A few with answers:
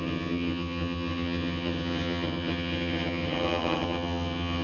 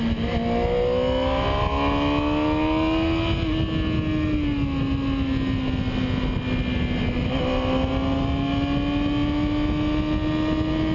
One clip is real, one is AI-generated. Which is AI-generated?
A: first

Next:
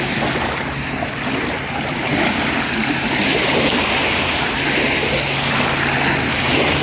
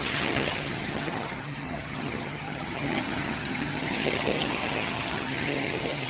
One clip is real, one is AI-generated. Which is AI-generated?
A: second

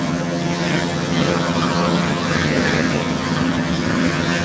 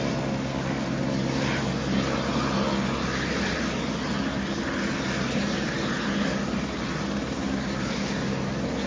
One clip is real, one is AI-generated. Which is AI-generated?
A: first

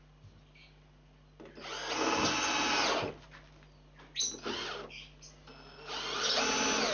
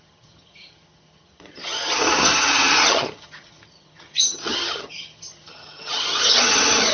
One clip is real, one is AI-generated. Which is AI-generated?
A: second